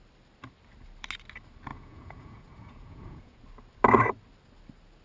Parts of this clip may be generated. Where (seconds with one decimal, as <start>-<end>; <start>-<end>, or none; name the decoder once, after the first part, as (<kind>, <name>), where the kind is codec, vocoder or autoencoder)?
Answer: 1.7-3.4 (vocoder, Vocos)

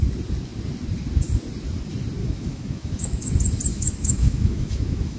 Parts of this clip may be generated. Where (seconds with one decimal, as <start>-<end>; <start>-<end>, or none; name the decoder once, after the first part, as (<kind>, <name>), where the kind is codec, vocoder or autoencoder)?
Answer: 2.2-3.3 (autoencoder, DAC-VAE); 3.7-5.2

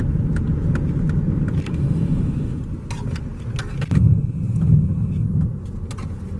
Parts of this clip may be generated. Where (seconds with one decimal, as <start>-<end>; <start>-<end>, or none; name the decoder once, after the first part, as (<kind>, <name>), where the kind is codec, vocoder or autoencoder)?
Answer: 1.7-2.6 (autoencoder, DAC-VAE)

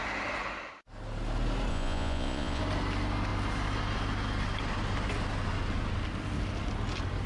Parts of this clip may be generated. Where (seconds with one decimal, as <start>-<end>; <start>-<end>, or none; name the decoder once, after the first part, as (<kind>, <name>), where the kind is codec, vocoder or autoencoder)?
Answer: 1.7-2.6 (vocoder, Vocos)

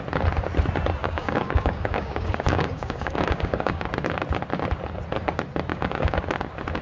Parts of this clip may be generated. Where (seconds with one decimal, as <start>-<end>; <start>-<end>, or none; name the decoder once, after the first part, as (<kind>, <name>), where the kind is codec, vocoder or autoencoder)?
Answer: 1.0-3.8 (codec, DAC); 5.7-6.2